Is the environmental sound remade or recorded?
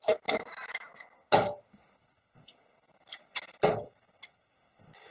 recorded